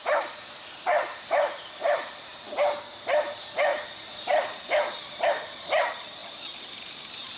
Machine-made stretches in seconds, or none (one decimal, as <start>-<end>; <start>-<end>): 0.0-2.3; 2.9-3.7; 5.0-7.4